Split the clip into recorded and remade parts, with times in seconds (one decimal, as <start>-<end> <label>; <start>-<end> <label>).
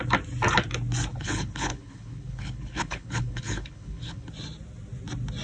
0.0-1.1 recorded; 1.1-4.3 remade; 4.3-5.4 recorded